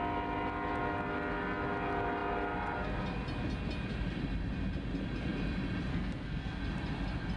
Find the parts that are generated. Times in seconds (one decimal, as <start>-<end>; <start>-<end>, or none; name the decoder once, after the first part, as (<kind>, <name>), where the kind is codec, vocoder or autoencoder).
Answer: 5.9-6.6 (codec, SNAC)